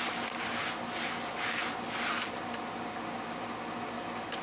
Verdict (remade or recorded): recorded